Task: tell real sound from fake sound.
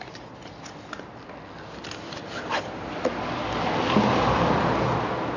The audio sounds real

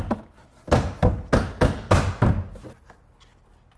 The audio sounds real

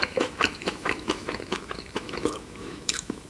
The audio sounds fake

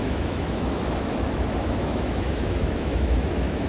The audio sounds fake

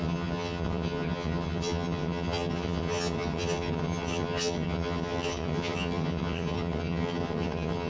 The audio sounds fake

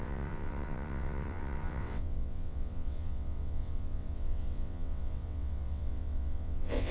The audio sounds fake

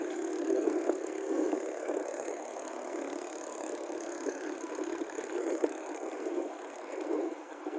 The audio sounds fake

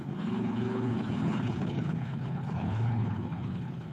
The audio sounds fake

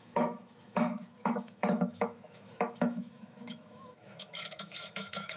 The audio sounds fake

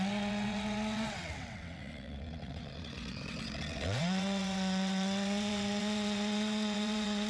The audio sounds fake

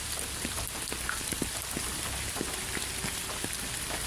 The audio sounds real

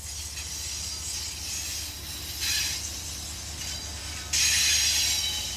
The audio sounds real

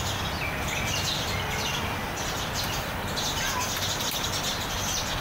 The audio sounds real